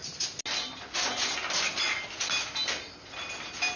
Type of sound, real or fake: real